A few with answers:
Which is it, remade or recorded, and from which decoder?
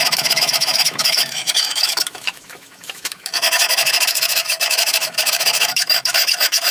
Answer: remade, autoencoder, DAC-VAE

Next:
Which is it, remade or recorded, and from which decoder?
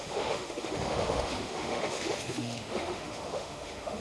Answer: remade, autoencoder, DAC-VAE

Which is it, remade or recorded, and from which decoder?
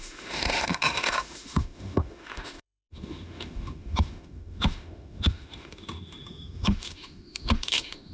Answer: remade, autoencoder, DAC-VAE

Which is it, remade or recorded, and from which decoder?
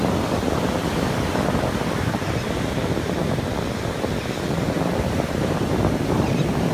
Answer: recorded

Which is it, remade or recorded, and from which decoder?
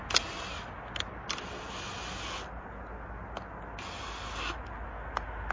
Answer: recorded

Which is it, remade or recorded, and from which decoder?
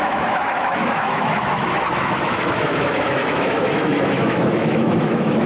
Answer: remade, autoencoder, DAC-VAE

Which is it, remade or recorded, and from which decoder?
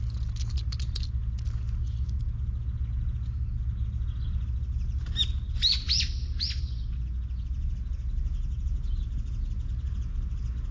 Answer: recorded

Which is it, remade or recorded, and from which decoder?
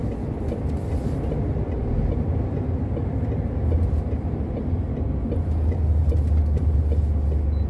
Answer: recorded